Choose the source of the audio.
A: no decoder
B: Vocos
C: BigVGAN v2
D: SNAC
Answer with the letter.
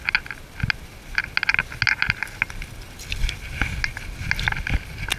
A